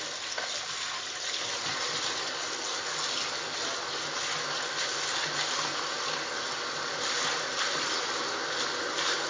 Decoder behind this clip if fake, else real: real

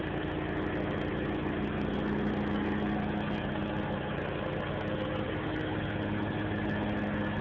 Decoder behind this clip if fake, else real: real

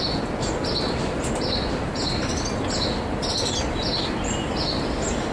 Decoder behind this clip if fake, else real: real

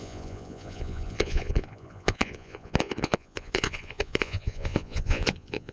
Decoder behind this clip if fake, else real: fake, vocoder, Vocos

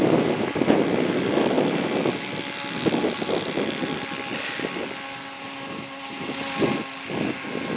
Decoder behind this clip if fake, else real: real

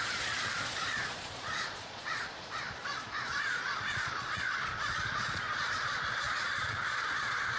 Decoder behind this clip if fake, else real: fake, vocoder, Vocos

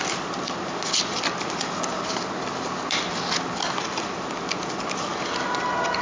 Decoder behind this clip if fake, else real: real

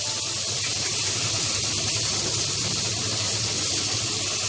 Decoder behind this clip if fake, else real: real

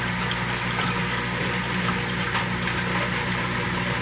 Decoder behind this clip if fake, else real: real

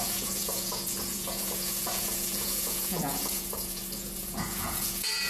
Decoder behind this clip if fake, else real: fake, vocoder, Vocos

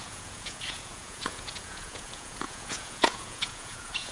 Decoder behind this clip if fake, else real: fake, vocoder, Vocos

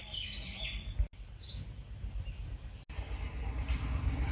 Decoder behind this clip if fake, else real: real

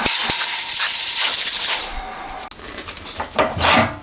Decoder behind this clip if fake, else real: real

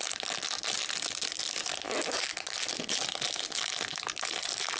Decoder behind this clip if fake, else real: real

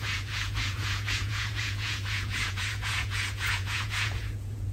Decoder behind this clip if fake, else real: fake, vocoder, Vocos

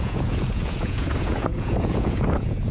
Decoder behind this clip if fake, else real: fake, vocoder, Vocos